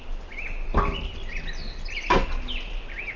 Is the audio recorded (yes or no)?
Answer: yes